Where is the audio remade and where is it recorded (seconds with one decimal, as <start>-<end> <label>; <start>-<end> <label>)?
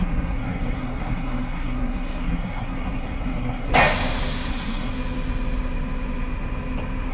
0.0-3.7 remade; 3.7-4.5 recorded; 4.5-4.9 remade; 4.9-7.1 recorded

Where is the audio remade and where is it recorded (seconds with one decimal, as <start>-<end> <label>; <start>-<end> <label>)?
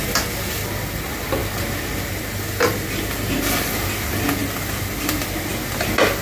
0.0-6.2 recorded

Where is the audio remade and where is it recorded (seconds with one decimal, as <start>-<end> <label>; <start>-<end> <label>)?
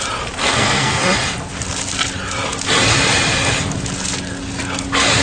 0.0-0.4 recorded; 0.4-1.0 remade; 1.0-5.2 recorded